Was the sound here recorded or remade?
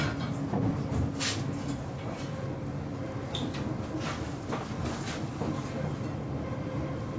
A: recorded